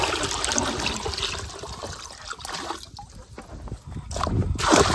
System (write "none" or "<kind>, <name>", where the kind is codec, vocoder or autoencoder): none